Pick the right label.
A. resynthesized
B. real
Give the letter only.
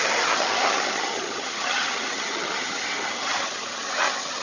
A